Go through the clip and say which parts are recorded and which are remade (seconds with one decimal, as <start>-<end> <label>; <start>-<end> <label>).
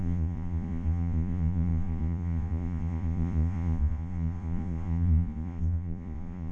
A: 0.0-6.5 remade